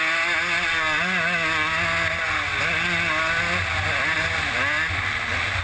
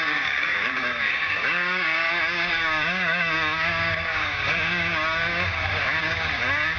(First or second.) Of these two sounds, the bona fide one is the first